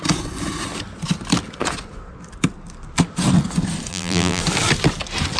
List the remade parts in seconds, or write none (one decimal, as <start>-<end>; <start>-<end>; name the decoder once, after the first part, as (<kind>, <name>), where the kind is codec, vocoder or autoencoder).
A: 3.9-4.4 (vocoder, BigVGAN v2)